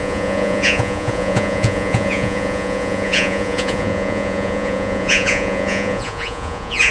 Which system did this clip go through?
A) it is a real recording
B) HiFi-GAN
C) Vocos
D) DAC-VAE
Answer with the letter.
C